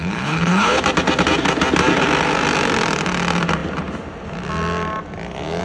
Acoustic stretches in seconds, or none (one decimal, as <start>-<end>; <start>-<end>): 0.8-5.6